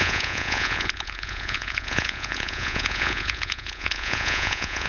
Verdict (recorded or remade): remade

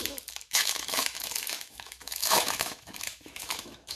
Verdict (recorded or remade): remade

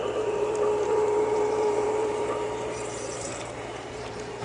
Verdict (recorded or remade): remade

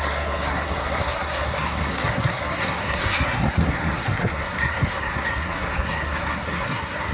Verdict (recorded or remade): remade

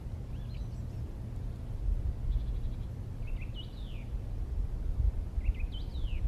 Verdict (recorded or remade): recorded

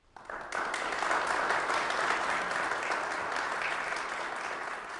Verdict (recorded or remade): recorded